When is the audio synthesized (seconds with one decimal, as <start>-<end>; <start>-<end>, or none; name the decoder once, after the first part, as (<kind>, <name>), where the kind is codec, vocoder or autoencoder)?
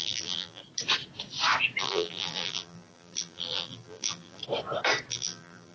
0.0-0.6 (vocoder, BigVGAN v2); 1.8-4.4; 5.1-5.7